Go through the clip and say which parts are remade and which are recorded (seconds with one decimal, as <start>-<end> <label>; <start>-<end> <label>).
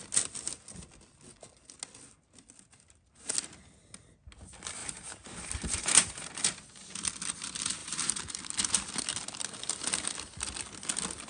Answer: 0.0-4.8 recorded; 4.8-6.3 remade; 6.3-7.8 recorded; 7.8-8.4 remade; 8.4-11.3 recorded